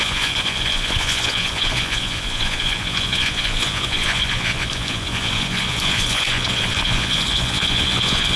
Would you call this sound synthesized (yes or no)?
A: yes